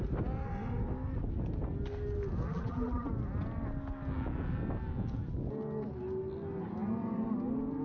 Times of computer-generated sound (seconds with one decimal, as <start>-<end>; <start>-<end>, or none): 2.5-3.1